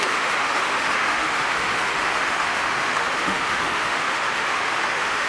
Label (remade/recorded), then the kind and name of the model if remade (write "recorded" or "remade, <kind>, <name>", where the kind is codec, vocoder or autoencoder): remade, autoencoder, DAC-VAE